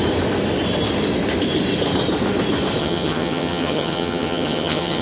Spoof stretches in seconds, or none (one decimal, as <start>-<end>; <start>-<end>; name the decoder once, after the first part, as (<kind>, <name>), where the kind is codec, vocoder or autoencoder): 2.8-5.0 (vocoder, HiFi-GAN)